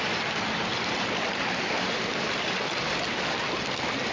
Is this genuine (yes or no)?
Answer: yes